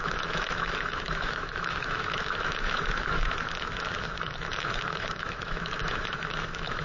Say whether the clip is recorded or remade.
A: remade